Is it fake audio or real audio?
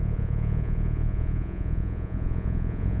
fake